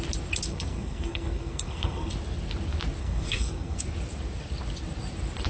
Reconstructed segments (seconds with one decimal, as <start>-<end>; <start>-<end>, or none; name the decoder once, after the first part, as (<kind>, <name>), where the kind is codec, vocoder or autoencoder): 0.5-2.1 (codec, SNAC); 3.0-3.8